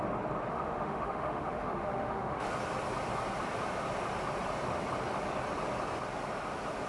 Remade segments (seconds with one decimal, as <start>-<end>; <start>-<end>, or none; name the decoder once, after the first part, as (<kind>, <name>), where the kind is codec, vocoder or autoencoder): 0.5-2.5 (autoencoder, DAC-VAE)